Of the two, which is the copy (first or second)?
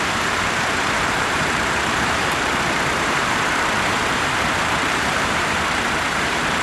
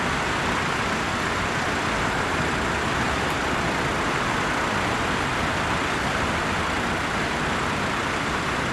first